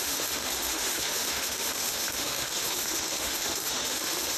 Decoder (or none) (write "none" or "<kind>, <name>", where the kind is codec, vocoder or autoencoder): autoencoder, DAC-VAE